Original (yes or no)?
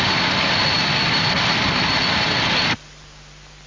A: yes